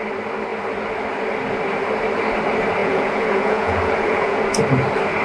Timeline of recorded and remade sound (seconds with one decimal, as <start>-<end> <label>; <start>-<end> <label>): 0.0-2.8 recorded; 2.8-4.4 remade; 4.4-5.2 recorded